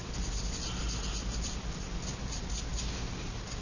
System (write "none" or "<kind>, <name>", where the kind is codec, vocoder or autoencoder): none